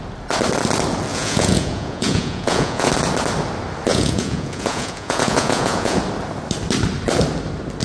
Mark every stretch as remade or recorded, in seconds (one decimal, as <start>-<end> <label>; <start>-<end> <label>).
0.0-1.1 recorded; 1.1-2.9 remade; 2.9-3.9 recorded; 3.9-6.0 remade; 6.0-7.8 recorded